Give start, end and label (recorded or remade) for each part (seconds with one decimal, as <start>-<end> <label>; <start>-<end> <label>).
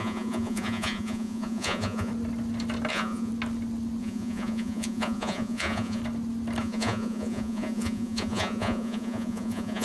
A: 0.0-2.1 remade; 2.1-2.9 recorded; 2.9-3.3 remade; 3.3-4.0 recorded; 4.0-6.0 remade; 6.0-6.6 recorded; 6.6-9.8 remade